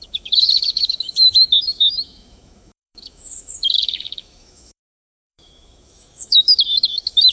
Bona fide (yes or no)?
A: no